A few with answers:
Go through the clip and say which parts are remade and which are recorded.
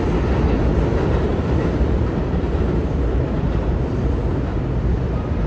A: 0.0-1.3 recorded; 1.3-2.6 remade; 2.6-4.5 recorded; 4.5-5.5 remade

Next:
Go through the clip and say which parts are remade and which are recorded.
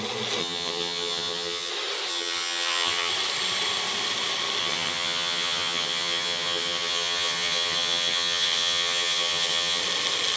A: 0.0-0.4 recorded; 0.4-1.7 remade; 1.7-2.1 recorded; 2.1-3.1 remade; 3.1-4.6 recorded; 4.6-9.8 remade; 9.8-10.4 recorded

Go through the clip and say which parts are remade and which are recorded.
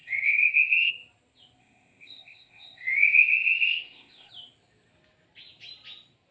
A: 0.0-0.9 remade; 0.9-1.6 recorded; 1.6-4.3 remade; 4.3-6.3 recorded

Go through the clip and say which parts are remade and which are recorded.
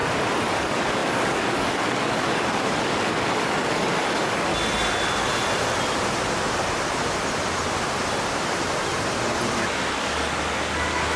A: 0.0-0.5 recorded; 0.5-4.5 remade; 4.5-9.7 recorded; 9.7-11.2 remade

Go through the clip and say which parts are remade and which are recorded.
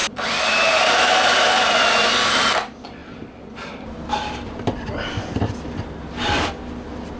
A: 0.0-1.9 remade; 1.9-3.0 recorded; 3.0-5.4 remade; 5.4-7.2 recorded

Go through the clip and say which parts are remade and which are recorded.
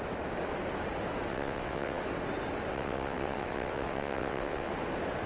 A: 0.0-1.3 recorded; 1.3-2.0 remade; 2.0-2.7 recorded; 2.7-4.7 remade; 4.7-5.3 recorded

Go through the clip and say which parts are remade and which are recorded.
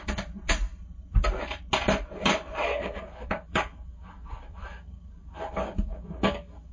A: 0.0-2.7 recorded; 2.7-6.7 remade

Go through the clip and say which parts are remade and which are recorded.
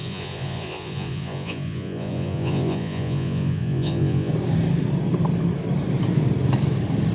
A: 0.0-4.3 remade; 4.3-7.1 recorded